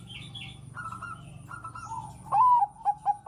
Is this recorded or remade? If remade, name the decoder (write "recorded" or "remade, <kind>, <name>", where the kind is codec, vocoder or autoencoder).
recorded